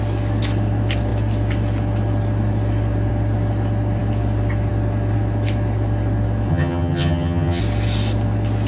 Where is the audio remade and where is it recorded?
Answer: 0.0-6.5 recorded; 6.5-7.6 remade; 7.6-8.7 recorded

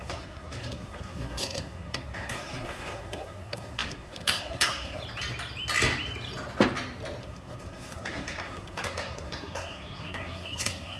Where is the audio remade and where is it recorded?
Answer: 0.0-5.0 remade; 5.0-7.2 recorded; 7.2-11.0 remade